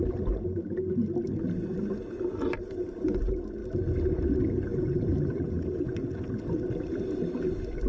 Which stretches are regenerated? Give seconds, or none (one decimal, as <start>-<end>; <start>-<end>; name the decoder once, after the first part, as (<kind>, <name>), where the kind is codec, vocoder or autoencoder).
none